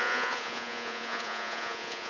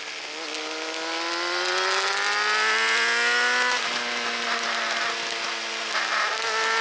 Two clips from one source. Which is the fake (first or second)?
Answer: first